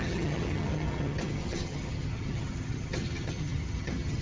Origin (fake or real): fake